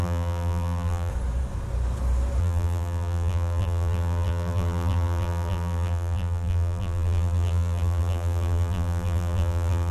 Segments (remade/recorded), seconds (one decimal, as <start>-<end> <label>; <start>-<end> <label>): 0.0-1.1 remade; 1.1-2.4 recorded; 2.4-9.9 remade